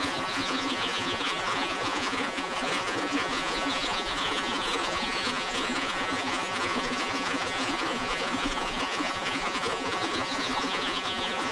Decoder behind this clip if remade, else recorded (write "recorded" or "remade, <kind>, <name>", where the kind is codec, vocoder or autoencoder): remade, vocoder, Vocos